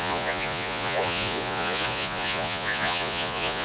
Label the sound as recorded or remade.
remade